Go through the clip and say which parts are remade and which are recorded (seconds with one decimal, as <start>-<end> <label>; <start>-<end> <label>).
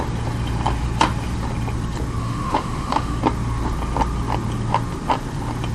0.0-2.2 recorded; 2.2-3.2 remade; 3.2-5.7 recorded